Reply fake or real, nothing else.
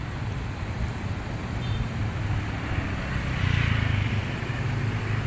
real